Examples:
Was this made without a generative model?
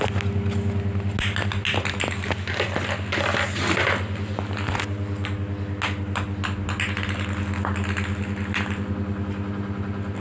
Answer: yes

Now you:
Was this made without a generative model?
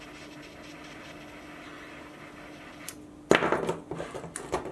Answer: yes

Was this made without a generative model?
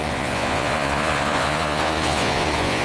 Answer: no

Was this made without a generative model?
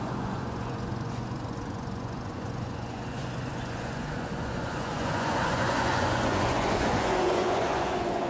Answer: no